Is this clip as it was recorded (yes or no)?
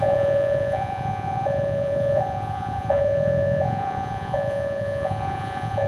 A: no